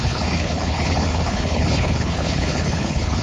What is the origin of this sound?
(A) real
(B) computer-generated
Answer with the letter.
B